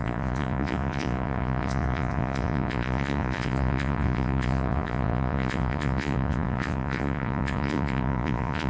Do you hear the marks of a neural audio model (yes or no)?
yes